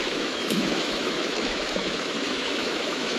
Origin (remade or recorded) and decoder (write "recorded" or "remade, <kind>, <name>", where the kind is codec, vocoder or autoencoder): remade, autoencoder, DAC-VAE